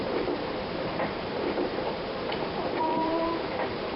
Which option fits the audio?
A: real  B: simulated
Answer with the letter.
B